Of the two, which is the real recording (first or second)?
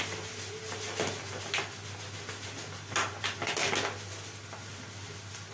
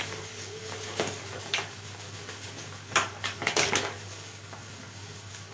first